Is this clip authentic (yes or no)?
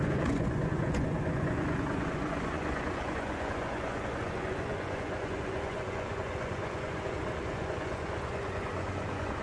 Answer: no